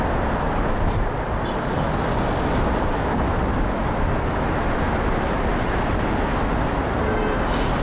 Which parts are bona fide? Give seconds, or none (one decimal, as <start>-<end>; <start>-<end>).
0.0-7.8